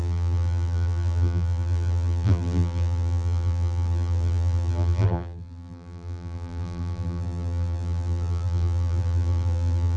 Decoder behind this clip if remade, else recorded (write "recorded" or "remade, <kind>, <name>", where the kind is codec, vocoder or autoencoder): remade, vocoder, BigVGAN v2